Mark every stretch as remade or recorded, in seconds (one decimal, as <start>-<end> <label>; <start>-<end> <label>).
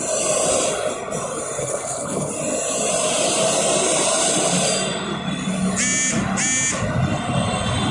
0.0-1.6 recorded; 1.6-2.3 remade; 2.3-7.9 recorded